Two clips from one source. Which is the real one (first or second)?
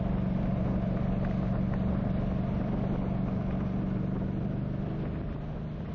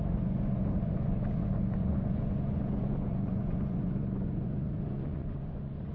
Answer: first